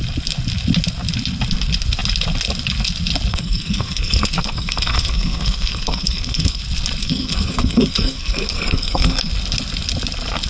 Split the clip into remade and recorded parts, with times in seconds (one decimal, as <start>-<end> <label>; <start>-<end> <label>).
0.0-3.3 recorded; 3.3-6.6 remade; 6.6-7.0 recorded; 7.0-9.3 remade; 9.3-10.5 recorded